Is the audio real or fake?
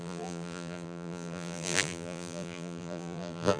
fake